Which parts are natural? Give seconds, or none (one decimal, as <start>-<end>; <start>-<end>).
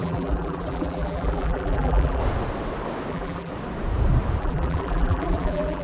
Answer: 2.2-3.1; 3.5-4.4